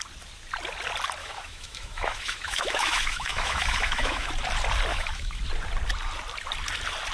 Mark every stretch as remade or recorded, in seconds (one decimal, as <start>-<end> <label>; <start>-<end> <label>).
0.0-1.2 recorded; 1.2-4.3 remade; 4.3-4.9 recorded; 4.9-5.4 remade; 5.4-7.1 recorded